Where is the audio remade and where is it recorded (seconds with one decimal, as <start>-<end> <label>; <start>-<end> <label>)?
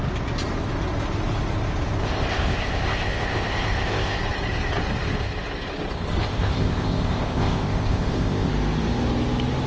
0.0-2.0 recorded; 2.0-4.2 remade; 4.2-6.2 recorded; 6.2-8.5 remade; 8.5-9.7 recorded